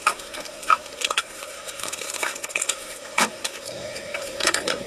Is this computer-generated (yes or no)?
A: yes